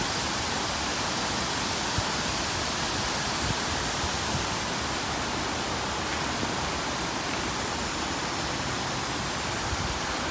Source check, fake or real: real